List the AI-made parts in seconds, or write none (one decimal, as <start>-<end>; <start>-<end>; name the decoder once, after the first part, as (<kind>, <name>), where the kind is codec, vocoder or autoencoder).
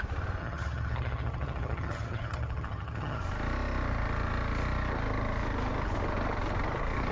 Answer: 0.4-3.2 (vocoder, HiFi-GAN)